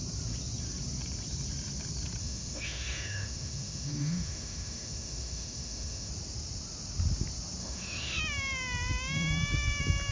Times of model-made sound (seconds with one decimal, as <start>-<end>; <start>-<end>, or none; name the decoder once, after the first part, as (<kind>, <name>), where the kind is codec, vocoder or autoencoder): 2.2-6.1 (autoencoder, DAC-VAE); 7.6-8.2